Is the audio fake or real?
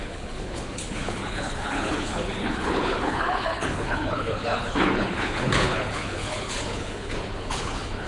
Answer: fake